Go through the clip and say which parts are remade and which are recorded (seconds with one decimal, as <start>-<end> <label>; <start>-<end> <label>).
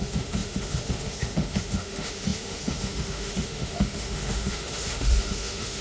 0.0-5.8 remade